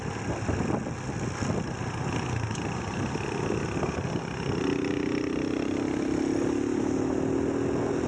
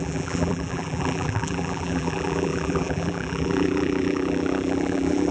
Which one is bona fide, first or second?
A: first